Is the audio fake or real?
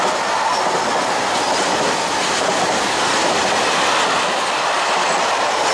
real